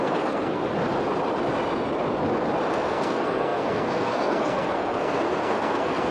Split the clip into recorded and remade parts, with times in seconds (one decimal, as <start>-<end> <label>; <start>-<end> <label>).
0.0-0.6 remade; 0.6-2.7 recorded; 2.7-6.1 remade